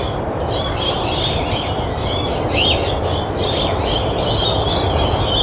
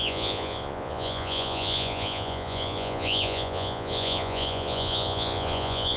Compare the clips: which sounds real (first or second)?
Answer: first